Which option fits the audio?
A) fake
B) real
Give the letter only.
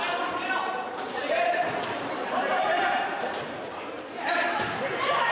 A